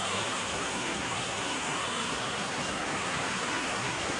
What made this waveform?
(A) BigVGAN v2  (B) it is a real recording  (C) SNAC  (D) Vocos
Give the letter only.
C